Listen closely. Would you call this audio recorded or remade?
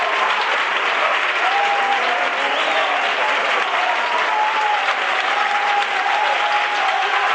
recorded